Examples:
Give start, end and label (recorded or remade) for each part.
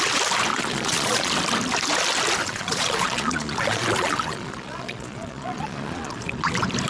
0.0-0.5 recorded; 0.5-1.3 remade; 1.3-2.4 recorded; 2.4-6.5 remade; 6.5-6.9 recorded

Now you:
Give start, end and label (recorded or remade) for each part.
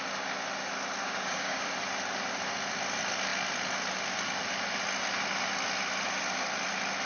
0.0-1.0 recorded; 1.0-1.7 remade; 1.7-7.1 recorded